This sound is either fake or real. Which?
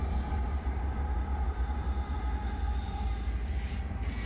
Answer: real